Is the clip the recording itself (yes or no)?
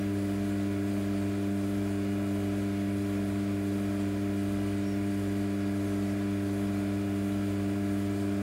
yes